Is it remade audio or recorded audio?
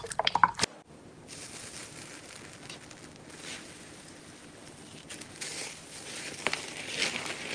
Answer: recorded